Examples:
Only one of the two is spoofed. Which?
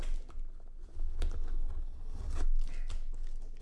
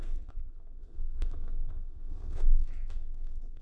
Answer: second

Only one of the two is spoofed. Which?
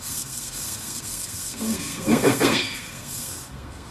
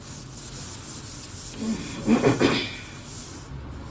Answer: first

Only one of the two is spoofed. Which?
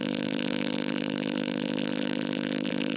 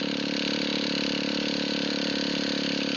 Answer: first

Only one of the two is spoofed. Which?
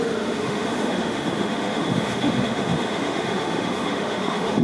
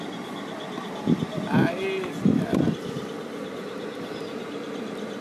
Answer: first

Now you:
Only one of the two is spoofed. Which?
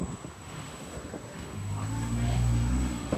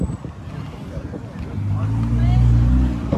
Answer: first